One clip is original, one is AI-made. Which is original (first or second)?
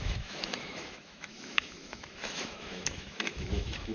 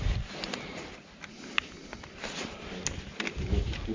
second